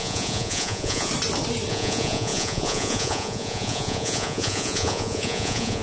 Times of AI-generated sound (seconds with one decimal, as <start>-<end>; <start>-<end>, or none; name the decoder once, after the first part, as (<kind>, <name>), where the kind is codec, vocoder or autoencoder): 0.0-1.1 (vocoder, Vocos); 1.7-5.8